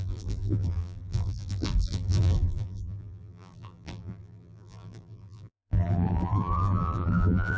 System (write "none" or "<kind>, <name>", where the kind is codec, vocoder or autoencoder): vocoder, BigVGAN v2